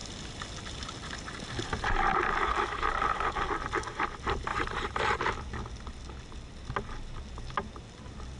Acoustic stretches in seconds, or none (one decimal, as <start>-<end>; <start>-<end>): 0.0-4.5; 5.2-8.4